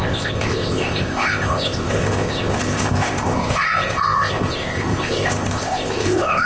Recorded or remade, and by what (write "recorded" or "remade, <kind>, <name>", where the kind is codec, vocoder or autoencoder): remade, codec, ZipCodec